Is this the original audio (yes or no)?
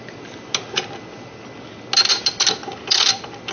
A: yes